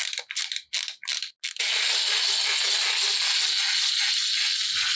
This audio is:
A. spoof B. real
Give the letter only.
B